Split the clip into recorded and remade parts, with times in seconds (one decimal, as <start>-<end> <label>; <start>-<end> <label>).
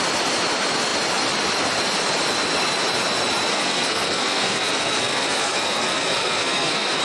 0.0-3.5 recorded; 3.5-7.0 remade